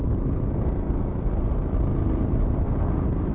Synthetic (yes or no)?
no